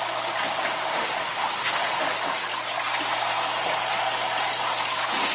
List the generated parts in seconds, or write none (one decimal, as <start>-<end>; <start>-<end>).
0.9-2.1